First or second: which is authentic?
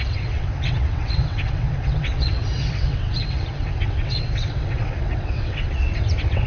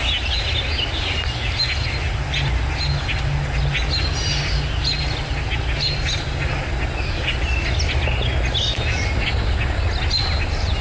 second